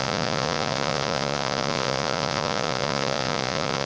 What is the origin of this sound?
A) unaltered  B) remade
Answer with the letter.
B